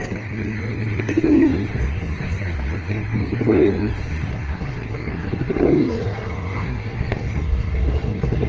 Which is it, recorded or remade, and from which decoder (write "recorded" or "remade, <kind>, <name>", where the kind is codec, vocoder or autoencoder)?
remade, codec, SNAC